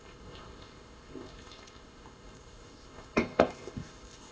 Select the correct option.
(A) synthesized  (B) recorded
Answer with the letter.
A